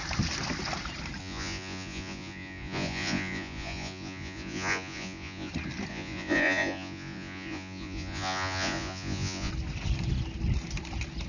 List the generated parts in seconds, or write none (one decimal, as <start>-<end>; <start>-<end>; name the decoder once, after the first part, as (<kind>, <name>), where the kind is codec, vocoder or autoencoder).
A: 1.2-5.5 (vocoder, Vocos); 5.9-9.5